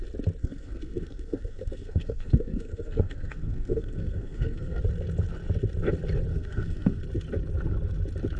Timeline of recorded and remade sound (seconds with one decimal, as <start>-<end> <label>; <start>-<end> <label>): 0.0-0.4 recorded; 0.4-4.8 remade; 4.8-6.3 recorded; 6.3-7.0 remade; 7.0-8.4 recorded